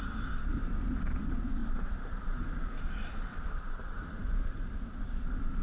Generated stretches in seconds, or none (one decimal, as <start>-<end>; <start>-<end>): 1.6-5.0